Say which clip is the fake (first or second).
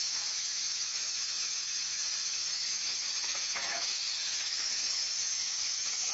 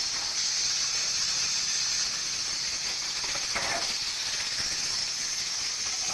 first